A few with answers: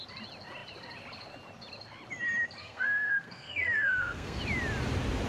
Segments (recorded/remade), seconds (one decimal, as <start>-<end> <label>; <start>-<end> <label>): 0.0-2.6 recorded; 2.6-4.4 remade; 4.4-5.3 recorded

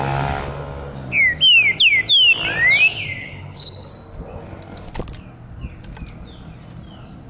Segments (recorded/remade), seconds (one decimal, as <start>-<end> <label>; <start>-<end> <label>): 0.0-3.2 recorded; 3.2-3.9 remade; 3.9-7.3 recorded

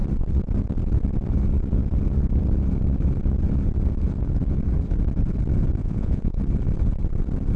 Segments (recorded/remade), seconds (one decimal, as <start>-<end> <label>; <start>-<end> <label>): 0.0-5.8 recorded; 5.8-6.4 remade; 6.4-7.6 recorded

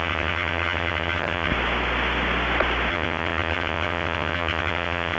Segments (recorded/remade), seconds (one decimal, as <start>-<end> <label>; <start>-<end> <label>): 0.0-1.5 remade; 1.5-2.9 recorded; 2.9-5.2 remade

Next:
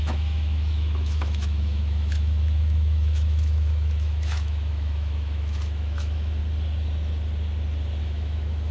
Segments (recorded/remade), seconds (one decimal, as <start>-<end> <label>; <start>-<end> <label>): 0.0-6.4 remade; 6.4-8.0 recorded; 8.0-8.7 remade

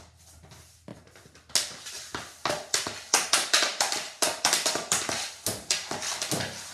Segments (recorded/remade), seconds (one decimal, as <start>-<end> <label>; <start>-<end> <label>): 0.0-6.7 recorded